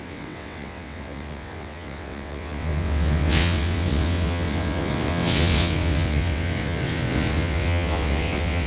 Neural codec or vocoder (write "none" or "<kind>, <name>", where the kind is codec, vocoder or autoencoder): vocoder, WaveNeXt